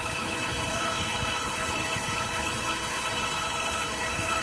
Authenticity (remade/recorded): remade